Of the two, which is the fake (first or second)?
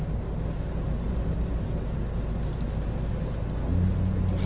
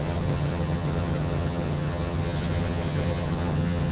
second